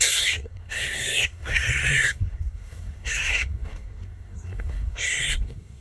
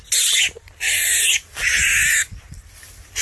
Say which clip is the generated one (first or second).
first